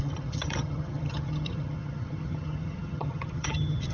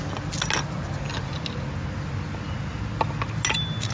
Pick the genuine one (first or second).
second